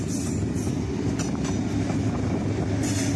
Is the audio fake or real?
real